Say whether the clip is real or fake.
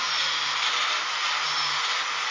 real